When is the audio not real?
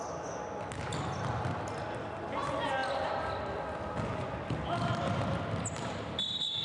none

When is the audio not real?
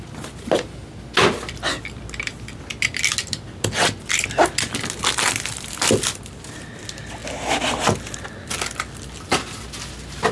none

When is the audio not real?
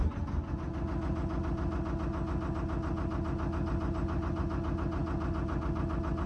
none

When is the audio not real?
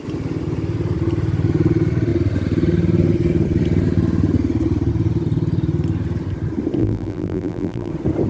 6.8-7.9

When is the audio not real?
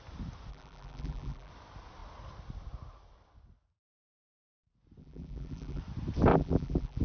0.5-1.5; 5.0-5.8; 6.3-7.0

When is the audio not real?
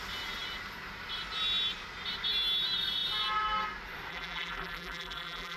4.1-5.6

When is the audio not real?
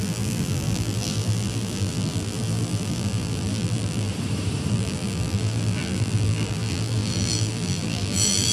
0.0-4.1; 4.7-8.5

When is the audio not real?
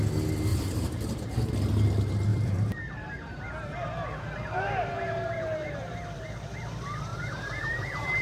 0.5-1.5; 2.3-6.2; 7.1-8.2